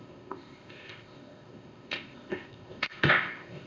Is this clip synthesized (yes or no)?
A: yes